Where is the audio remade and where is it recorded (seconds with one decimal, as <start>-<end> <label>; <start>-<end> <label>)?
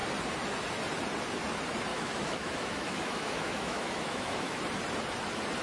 0.0-1.9 recorded; 1.9-4.6 remade; 4.6-5.6 recorded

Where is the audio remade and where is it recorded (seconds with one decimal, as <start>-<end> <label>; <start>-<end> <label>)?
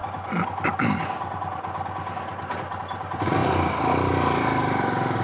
0.0-5.2 recorded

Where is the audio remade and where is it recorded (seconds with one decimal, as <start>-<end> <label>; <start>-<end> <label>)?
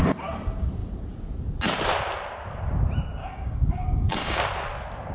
0.0-3.2 recorded; 3.2-4.4 remade; 4.4-5.1 recorded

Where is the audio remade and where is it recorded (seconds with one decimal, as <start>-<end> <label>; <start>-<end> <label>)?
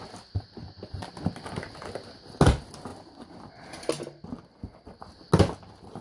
0.0-6.0 recorded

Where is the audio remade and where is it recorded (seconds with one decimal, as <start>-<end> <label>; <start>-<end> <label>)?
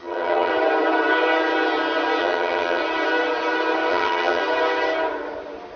0.0-0.5 remade; 0.5-2.2 recorded; 2.2-2.8 remade; 2.8-3.9 recorded; 3.9-4.4 remade; 4.4-5.8 recorded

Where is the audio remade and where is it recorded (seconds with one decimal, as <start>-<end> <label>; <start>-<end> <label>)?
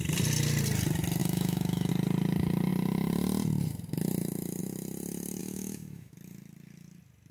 0.0-1.2 recorded; 1.2-1.9 remade; 1.9-5.4 recorded; 5.4-6.1 remade; 6.1-7.3 recorded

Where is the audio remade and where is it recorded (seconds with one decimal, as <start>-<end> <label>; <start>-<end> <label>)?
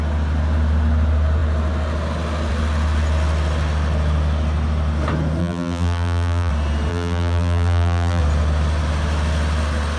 0.0-5.4 recorded; 5.4-6.5 remade; 6.5-6.9 recorded; 6.9-8.2 remade; 8.2-10.0 recorded